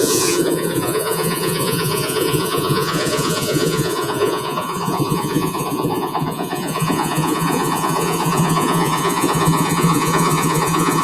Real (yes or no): no